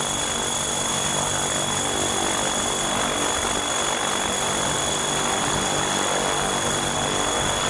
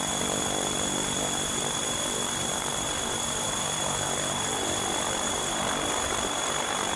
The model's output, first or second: second